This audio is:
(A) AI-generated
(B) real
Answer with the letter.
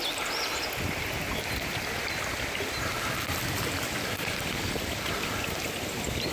B